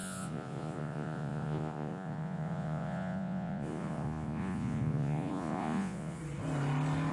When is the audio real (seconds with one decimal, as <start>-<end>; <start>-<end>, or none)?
6.2-7.1